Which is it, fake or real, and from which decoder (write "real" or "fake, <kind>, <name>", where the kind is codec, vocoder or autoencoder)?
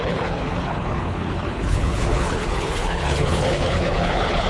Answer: fake, codec, HILCodec